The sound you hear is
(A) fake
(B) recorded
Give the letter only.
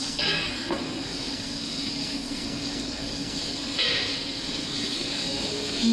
A